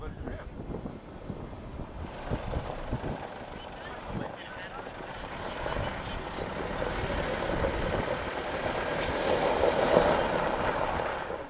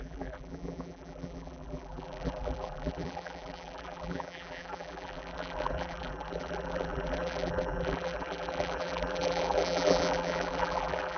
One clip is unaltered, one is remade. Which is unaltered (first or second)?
first